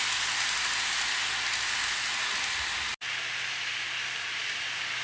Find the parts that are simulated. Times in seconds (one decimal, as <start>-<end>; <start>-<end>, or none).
none